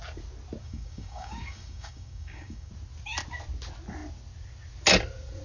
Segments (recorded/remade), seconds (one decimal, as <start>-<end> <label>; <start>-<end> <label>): 0.0-0.6 recorded; 0.6-2.7 remade; 2.7-5.4 recorded